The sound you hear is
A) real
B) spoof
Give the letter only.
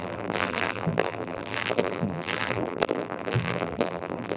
B